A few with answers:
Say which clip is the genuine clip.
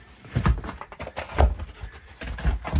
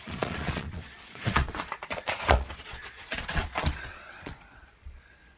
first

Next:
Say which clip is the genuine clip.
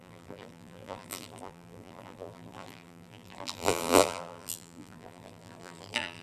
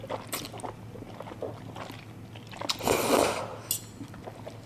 second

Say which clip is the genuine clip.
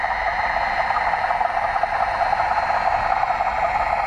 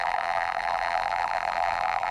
first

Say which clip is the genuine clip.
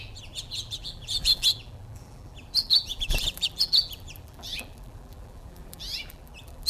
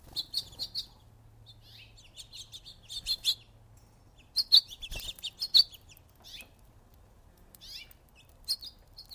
second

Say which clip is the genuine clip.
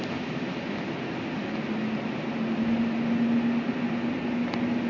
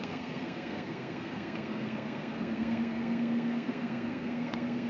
first